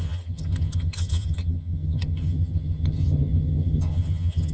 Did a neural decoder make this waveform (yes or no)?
yes